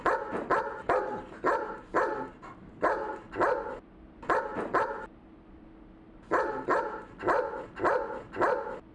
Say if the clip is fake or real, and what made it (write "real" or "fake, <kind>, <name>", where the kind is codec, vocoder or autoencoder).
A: real